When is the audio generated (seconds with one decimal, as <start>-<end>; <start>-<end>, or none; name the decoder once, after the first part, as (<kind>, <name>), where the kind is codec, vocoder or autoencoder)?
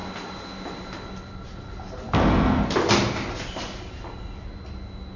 none